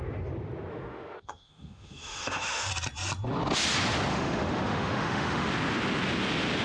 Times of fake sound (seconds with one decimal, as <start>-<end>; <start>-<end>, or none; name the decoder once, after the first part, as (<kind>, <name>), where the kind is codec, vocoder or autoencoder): 0.7-2.7 (autoencoder, DAC-VAE); 4.1-5.5